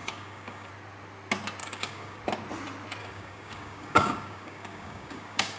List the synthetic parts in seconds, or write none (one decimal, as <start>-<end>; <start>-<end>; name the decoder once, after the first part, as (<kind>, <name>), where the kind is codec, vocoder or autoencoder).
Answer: 0.0-0.7 (codec, DAC); 1.6-2.2; 3.0-5.6